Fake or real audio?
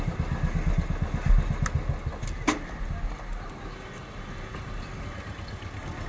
real